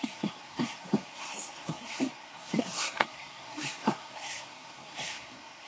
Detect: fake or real fake